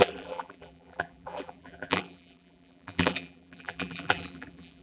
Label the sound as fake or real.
fake